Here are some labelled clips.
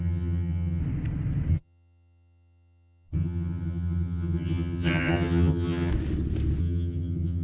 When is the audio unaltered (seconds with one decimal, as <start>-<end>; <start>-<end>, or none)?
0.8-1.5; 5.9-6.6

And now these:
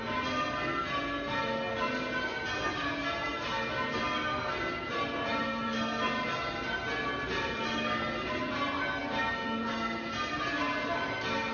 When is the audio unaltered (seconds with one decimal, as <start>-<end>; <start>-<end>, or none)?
0.0-11.5

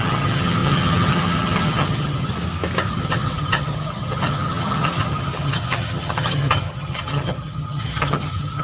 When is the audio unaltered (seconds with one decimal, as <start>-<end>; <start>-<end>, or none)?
2.3-2.9

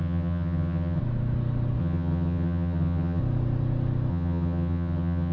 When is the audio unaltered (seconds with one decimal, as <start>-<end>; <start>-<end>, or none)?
1.0-1.8; 3.2-4.1